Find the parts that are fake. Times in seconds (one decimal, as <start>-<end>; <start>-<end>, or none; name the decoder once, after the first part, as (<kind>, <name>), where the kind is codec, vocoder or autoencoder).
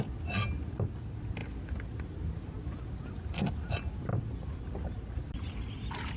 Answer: none